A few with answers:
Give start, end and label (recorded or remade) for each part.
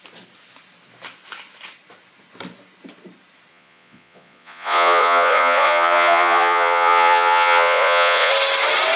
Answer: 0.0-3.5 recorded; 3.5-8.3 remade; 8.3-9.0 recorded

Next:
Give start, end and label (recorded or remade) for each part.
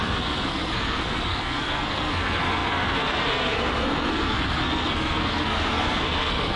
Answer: 0.0-6.6 remade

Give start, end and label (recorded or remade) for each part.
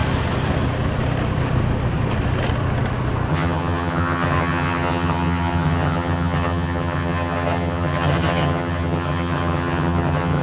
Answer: 0.0-3.3 recorded; 3.3-10.4 remade